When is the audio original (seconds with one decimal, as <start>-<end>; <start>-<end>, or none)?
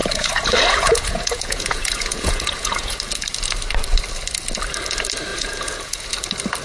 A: 3.0-5.3; 6.1-6.6